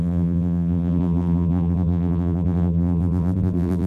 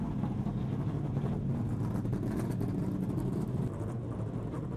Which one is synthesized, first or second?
first